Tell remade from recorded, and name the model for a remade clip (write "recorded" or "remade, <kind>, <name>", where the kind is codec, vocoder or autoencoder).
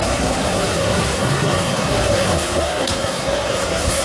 remade, codec, SNAC